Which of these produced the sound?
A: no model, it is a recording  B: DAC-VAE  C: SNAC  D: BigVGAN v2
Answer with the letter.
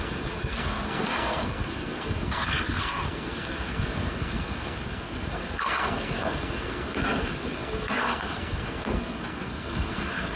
C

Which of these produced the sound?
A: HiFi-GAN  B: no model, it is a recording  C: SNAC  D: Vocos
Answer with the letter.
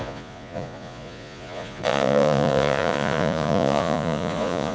D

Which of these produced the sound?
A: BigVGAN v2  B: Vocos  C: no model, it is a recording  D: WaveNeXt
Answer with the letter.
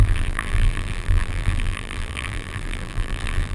A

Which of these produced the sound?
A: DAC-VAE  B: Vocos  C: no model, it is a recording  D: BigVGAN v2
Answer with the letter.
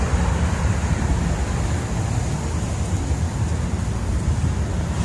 C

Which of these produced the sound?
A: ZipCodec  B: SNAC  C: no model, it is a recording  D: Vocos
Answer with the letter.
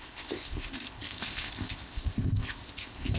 A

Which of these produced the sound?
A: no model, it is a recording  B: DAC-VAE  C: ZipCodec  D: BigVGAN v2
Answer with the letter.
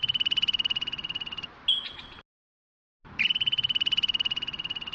A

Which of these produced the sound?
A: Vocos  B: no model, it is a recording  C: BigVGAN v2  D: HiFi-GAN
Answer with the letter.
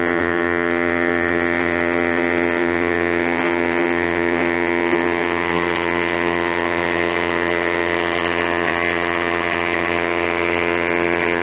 D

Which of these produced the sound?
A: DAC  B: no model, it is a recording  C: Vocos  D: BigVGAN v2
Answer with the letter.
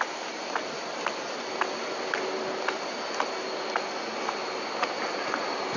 B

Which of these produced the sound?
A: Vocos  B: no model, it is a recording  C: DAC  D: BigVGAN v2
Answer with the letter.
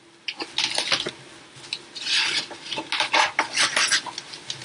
B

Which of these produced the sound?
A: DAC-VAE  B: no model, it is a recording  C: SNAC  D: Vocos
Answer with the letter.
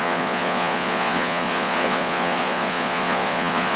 D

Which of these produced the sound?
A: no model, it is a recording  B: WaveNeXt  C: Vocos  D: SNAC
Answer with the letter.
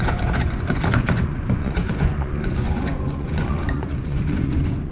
C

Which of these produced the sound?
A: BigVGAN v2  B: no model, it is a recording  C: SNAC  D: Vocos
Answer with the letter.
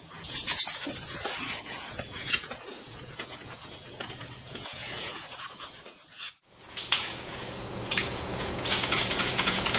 D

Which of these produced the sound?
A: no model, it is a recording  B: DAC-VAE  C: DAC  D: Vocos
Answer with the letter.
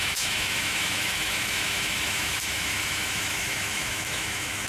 B